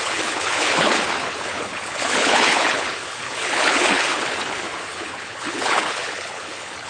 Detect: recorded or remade remade